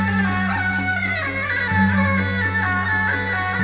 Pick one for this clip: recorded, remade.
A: recorded